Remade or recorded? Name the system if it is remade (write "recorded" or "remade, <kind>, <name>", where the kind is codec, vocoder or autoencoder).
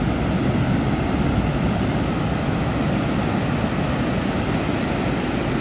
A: recorded